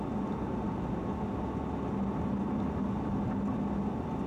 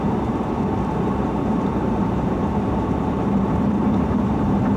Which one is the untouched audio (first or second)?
first